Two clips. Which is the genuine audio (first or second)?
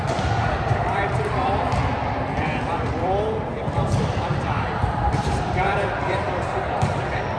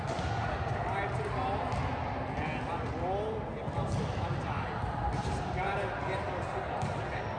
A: second